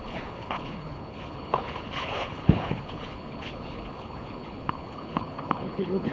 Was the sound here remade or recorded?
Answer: remade